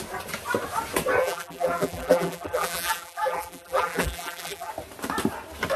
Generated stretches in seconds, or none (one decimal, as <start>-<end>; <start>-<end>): 1.2-4.7